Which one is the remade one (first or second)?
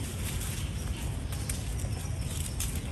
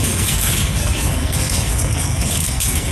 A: second